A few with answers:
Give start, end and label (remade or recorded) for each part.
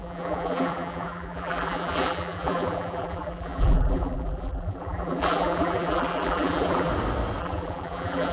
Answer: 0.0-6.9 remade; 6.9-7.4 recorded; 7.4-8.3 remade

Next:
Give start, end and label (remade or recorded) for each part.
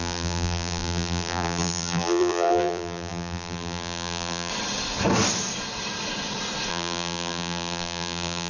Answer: 0.0-4.5 remade; 4.5-6.7 recorded; 6.7-8.5 remade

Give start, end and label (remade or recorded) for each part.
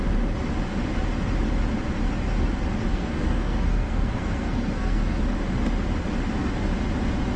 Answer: 0.0-2.9 recorded; 2.9-5.2 remade; 5.2-7.4 recorded